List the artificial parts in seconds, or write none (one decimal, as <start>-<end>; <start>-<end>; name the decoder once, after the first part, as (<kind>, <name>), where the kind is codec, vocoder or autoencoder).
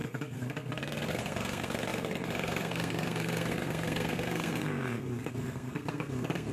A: 0.0-6.5 (codec, SNAC)